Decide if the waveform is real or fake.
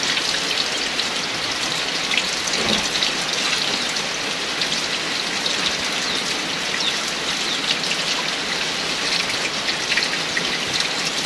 real